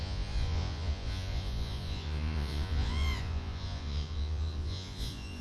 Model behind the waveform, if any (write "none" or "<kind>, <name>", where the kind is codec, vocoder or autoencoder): vocoder, Vocos